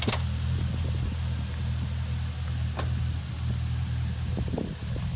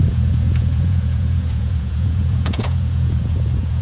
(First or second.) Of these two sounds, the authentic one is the first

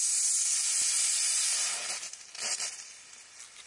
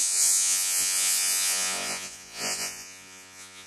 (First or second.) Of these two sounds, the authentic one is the first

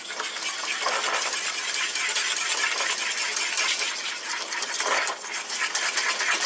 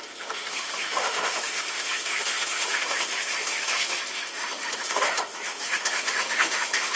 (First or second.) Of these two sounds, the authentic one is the first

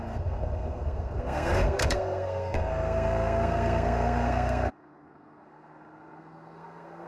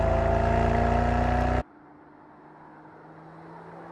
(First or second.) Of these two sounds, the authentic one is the second